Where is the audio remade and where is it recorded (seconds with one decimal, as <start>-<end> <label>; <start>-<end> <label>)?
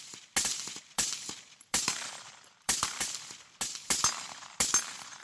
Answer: 0.0-0.5 recorded; 0.5-3.6 remade; 3.6-5.2 recorded